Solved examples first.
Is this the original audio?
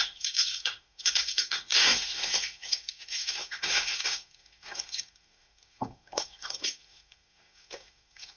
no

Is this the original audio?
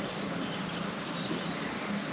yes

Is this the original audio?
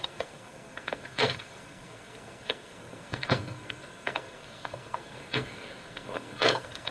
no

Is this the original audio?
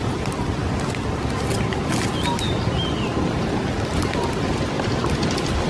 yes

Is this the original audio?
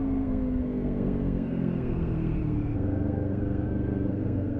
no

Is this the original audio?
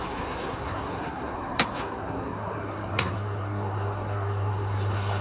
no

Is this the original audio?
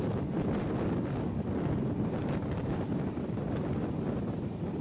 yes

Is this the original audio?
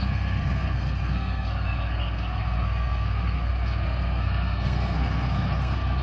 no